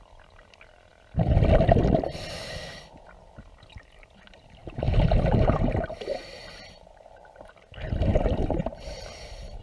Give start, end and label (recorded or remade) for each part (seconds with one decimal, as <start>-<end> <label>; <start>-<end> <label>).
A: 0.0-4.6 recorded; 4.6-7.5 remade; 7.5-8.1 recorded; 8.1-9.6 remade